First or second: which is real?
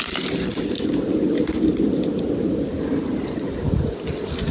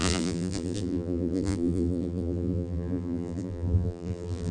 first